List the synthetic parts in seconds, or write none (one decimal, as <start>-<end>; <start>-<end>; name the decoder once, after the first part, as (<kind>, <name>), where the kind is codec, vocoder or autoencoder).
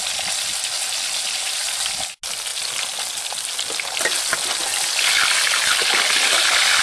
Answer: none